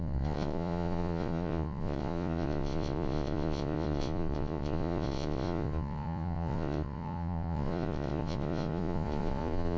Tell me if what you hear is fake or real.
fake